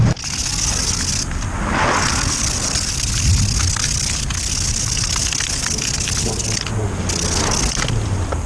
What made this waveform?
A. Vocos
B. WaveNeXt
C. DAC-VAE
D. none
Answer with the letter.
D